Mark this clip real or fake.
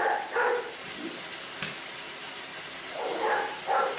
real